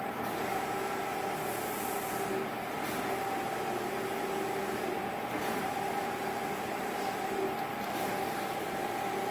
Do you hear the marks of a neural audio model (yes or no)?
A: no